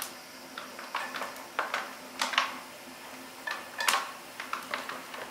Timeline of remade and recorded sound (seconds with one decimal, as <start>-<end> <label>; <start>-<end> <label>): 0.0-5.3 recorded